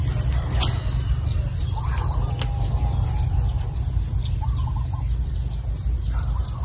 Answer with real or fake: real